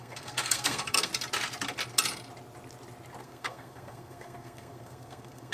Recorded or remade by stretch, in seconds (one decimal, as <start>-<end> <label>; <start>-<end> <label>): 0.0-1.1 remade; 1.1-3.2 recorded; 3.2-5.5 remade